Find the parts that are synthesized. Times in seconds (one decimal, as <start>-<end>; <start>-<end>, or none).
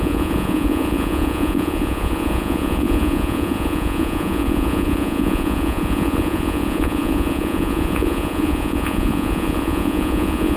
0.0-10.6